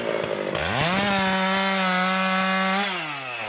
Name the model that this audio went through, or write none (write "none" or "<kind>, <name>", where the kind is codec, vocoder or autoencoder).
none